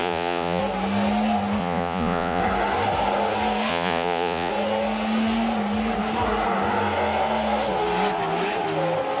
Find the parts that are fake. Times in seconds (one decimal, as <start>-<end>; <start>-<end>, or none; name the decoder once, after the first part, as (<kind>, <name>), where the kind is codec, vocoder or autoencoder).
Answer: 0.0-0.6 (vocoder, Vocos); 1.6-2.4; 3.7-4.5